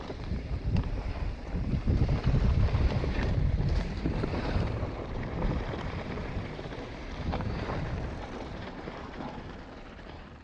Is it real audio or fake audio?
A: fake